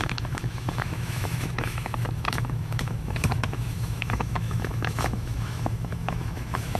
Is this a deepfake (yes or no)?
yes